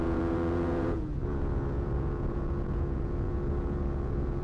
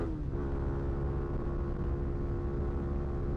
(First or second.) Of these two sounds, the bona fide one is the second